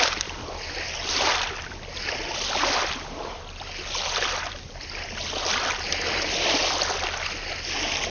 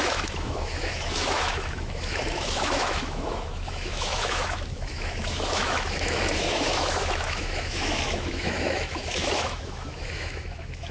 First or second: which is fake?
second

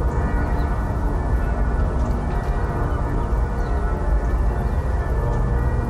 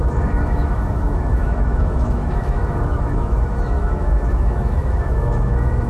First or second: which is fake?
second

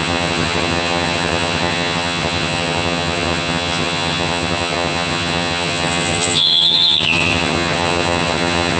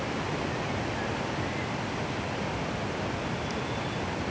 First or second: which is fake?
first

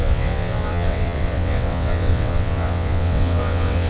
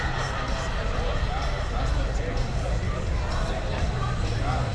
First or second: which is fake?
first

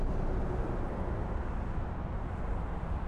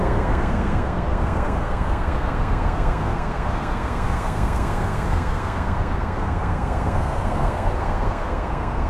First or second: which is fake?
second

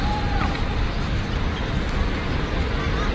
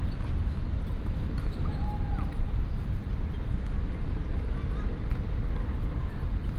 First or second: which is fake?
first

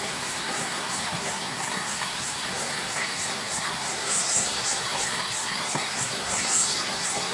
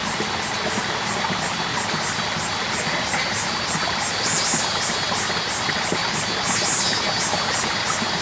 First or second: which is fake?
first